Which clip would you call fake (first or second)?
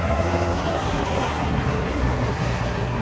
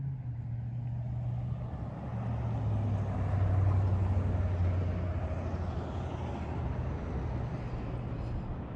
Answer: first